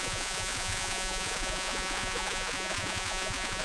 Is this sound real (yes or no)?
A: no